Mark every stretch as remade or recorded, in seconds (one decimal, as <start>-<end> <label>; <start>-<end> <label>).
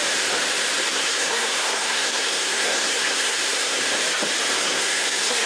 0.0-0.9 recorded; 0.9-3.8 remade; 3.8-4.6 recorded; 4.6-5.5 remade